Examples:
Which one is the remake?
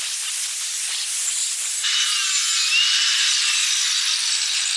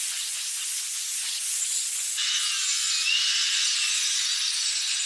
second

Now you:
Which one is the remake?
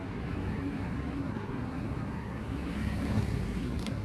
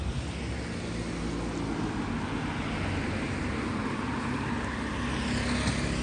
first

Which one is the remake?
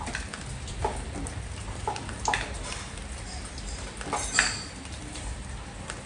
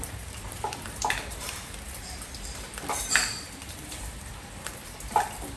second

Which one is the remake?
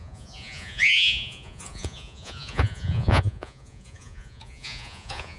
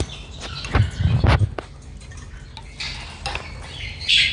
first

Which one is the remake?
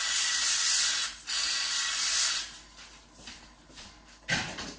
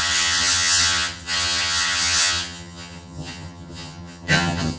second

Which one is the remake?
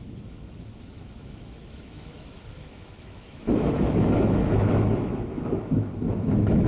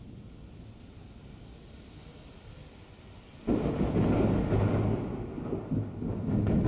first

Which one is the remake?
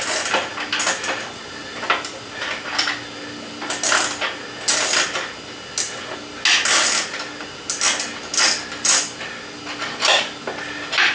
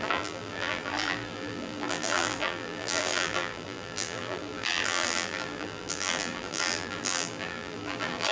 second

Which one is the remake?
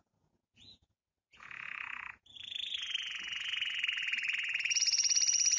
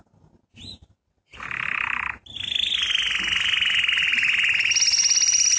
first